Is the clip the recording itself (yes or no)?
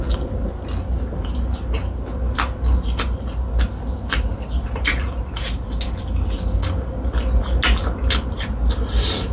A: yes